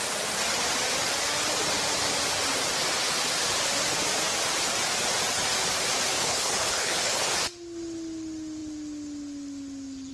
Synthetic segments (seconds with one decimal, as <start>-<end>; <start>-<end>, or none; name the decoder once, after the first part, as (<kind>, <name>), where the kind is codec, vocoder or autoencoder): 6.2-7.3 (codec, HILCodec)